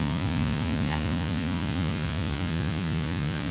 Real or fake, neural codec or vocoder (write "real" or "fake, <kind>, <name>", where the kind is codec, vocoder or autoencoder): fake, vocoder, Vocos